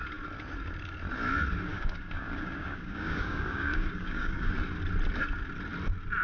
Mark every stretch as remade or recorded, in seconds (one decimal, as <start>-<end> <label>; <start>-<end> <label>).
0.0-1.7 recorded; 1.7-4.5 remade; 4.5-6.2 recorded